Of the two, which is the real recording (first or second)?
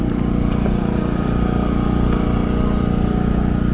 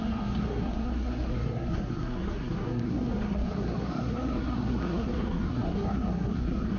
first